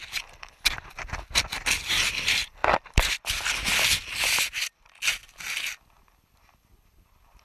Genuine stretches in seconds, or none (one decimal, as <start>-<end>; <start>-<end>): 0.0-7.4